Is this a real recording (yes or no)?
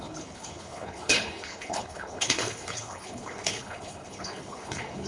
no